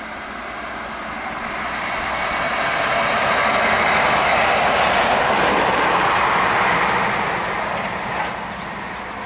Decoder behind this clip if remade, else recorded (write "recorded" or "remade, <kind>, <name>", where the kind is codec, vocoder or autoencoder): recorded